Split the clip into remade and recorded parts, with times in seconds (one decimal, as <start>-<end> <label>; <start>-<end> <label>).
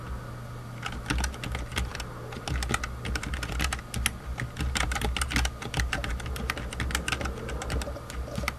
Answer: 0.0-8.6 recorded